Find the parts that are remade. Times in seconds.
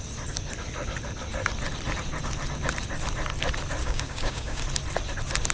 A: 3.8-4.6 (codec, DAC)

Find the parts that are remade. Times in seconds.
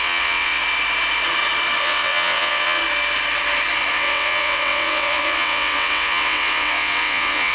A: 0.0-0.6 (vocoder, WaveNeXt); 1.8-2.8; 3.9-7.5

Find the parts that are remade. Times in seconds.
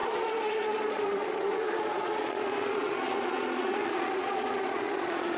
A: 0.0-5.4 (vocoder, Vocos)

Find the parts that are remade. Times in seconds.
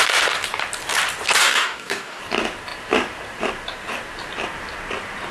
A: 1.4-2.2 (codec, DAC)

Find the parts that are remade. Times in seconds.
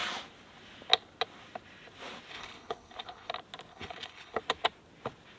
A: 2.3-3.3 (codec, HILCodec); 3.7-4.4